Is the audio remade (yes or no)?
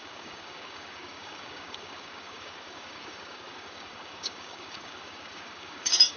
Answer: yes